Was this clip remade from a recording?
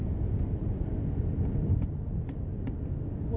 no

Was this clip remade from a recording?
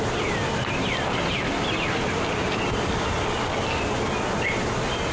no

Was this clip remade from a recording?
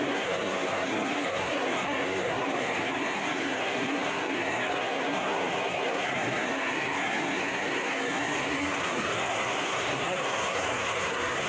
yes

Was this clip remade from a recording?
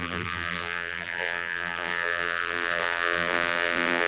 yes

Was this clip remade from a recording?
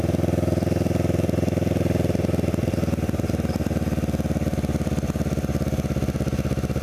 no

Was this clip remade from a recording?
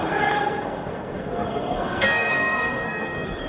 yes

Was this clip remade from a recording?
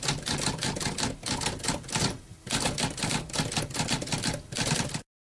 no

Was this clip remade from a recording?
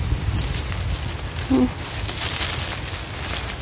no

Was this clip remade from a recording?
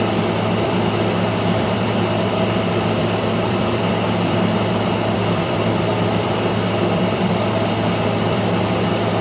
yes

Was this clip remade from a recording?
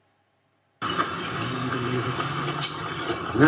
no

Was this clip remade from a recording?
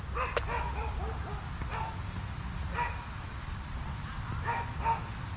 no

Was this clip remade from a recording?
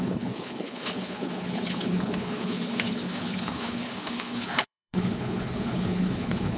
yes